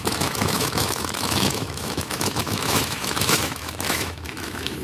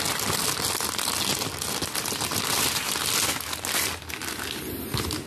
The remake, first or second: first